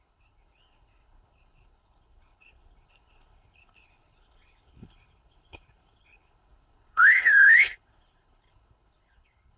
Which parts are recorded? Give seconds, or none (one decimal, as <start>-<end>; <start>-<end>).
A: none